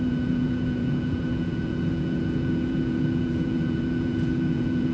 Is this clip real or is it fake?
fake